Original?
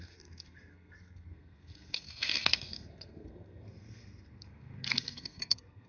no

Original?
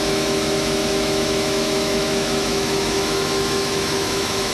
no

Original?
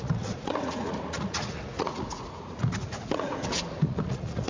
no